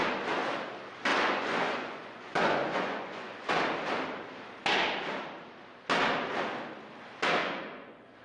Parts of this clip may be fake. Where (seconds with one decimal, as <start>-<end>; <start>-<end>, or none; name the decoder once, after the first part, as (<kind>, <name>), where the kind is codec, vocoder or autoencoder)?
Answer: 1.1-3.5 (vocoder, Vocos); 7.4-8.2